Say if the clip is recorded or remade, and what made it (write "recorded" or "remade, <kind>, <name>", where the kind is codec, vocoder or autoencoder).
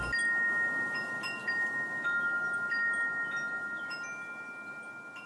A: recorded